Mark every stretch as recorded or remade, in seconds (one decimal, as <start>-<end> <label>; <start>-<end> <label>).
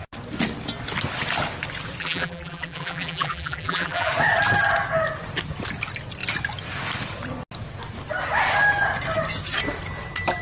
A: 0.0-2.0 recorded; 2.0-4.1 remade; 4.1-10.4 recorded